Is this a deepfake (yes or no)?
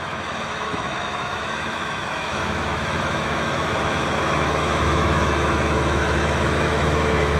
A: yes